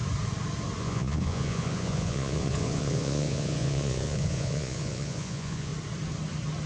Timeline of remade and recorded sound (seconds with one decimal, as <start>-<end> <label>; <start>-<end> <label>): 0.0-0.8 recorded; 0.8-5.7 remade; 5.7-6.7 recorded